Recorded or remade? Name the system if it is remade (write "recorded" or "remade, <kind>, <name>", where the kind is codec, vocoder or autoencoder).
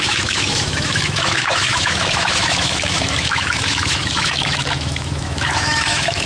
remade, autoencoder, DAC-VAE